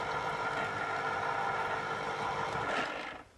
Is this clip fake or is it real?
real